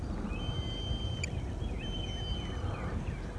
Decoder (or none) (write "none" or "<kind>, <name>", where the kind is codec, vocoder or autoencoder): none